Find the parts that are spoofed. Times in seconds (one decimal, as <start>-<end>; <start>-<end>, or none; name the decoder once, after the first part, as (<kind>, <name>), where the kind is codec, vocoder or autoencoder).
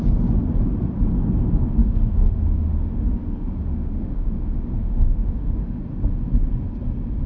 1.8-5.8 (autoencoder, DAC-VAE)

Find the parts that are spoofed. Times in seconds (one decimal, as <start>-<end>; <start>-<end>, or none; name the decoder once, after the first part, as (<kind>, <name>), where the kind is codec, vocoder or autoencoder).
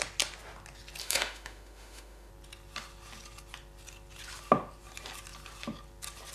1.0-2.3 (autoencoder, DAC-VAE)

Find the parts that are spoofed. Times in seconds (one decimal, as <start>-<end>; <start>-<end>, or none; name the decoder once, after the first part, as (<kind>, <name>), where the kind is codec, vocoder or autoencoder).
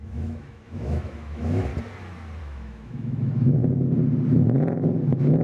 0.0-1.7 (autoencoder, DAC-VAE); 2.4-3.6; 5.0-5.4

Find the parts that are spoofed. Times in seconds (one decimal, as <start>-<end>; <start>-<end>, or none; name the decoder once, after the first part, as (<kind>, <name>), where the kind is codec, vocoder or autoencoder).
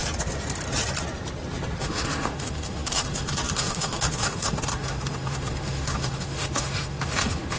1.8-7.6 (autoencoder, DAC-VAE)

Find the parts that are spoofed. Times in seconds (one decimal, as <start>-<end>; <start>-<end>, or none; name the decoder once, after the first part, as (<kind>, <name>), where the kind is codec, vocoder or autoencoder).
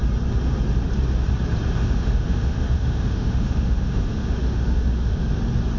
1.8-5.3 (autoencoder, DAC-VAE)